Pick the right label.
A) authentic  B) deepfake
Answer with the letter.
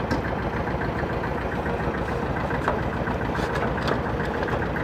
A